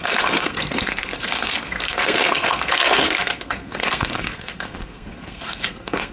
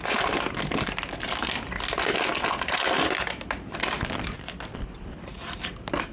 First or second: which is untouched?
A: second